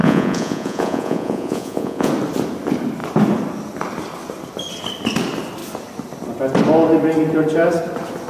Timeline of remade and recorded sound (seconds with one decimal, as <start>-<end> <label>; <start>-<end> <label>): 0.0-2.1 remade; 2.1-8.3 recorded

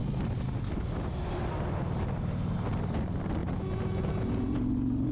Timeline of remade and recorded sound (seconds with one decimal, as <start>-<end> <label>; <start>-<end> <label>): 0.0-3.4 recorded; 3.4-5.1 remade

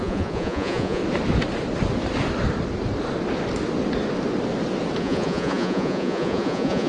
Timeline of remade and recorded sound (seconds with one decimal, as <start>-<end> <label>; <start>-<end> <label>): 0.0-1.0 remade; 1.0-5.0 recorded; 5.0-6.9 remade

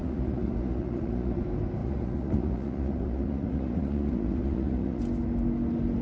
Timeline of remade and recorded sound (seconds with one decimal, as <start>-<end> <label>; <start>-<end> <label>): 0.0-1.4 remade; 1.4-1.8 recorded; 1.8-5.0 remade; 5.0-6.0 recorded

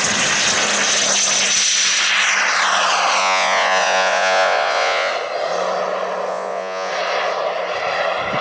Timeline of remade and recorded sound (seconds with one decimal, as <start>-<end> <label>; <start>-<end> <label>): 0.0-3.2 recorded; 3.2-5.1 remade; 5.1-6.3 recorded; 6.3-6.9 remade; 6.9-8.4 recorded

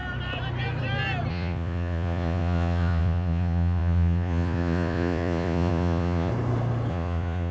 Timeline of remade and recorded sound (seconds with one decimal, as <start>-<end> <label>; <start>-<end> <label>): 0.0-1.3 recorded; 1.3-6.3 remade; 6.3-6.9 recorded; 6.9-7.5 remade